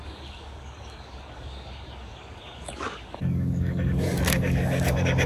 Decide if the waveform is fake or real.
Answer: fake